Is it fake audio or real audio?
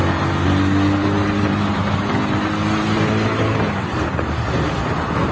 real